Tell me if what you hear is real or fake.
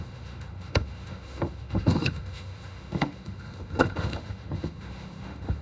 fake